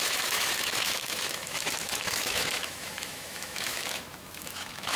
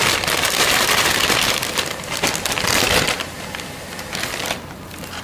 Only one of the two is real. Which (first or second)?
second